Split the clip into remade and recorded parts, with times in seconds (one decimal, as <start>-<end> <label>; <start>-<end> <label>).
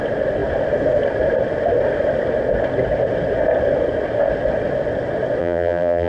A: 0.0-5.4 recorded; 5.4-6.1 remade